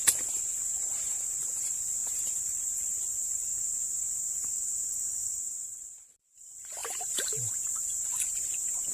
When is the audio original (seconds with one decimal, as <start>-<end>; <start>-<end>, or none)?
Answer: 3.5-5.2